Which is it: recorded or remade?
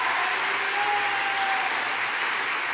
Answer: recorded